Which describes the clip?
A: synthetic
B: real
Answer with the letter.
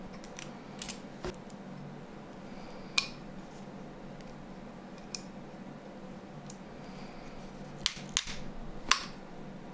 B